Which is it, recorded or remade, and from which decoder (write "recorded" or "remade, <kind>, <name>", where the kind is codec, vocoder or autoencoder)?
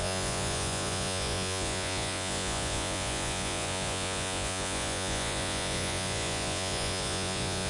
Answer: remade, vocoder, Vocos